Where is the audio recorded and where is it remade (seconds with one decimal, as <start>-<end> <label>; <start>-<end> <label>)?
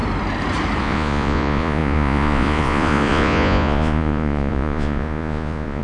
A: 0.0-0.8 recorded; 0.8-5.8 remade